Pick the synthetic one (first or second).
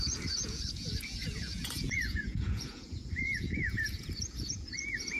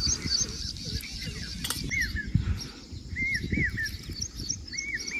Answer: first